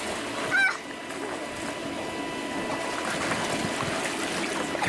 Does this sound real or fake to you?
real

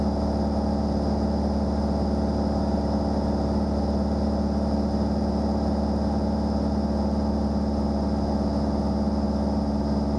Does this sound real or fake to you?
real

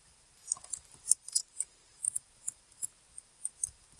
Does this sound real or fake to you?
fake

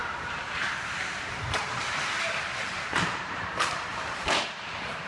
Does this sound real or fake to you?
fake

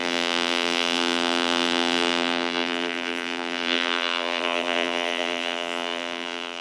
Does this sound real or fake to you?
fake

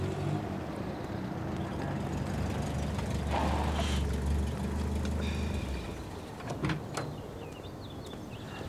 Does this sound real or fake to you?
real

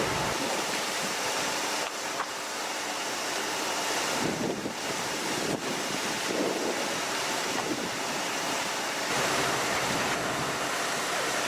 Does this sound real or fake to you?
fake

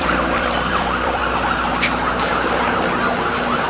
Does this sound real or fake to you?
fake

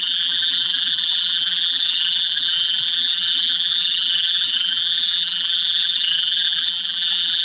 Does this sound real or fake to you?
fake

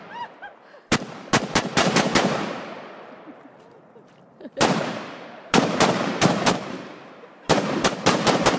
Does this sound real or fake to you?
fake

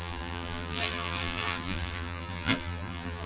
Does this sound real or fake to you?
fake